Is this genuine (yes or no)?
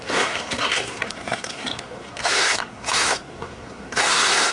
no